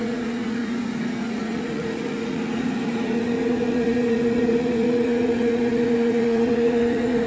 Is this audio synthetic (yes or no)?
yes